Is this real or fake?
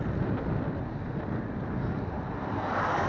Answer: real